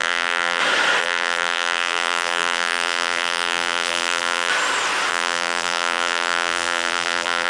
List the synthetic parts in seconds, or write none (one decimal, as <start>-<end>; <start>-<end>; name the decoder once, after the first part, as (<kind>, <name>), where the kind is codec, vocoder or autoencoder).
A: 0.0-0.6 (vocoder, BigVGAN v2); 1.0-4.5; 5.1-7.5